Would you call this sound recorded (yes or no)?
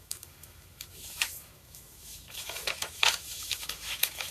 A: no